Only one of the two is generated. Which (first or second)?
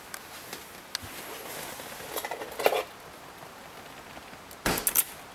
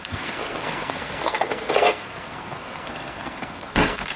second